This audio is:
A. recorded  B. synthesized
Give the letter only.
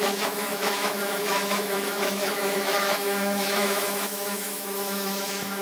B